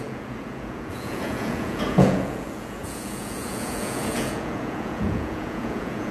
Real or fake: fake